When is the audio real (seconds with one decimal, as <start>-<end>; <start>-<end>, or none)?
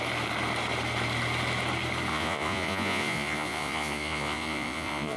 0.0-2.1